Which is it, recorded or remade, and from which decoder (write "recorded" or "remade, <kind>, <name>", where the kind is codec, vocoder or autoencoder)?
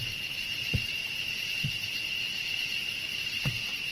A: remade, vocoder, BigVGAN v2